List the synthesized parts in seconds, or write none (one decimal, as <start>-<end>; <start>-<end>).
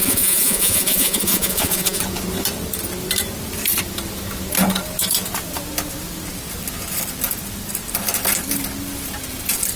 0.0-2.0